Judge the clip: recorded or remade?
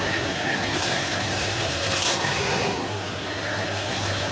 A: remade